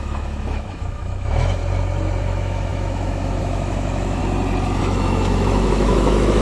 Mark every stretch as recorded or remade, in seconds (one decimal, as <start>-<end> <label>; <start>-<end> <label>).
0.0-1.6 remade; 1.6-2.2 recorded; 2.2-4.2 remade; 4.2-4.8 recorded; 4.8-6.4 remade